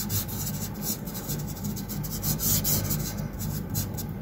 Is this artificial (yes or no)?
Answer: no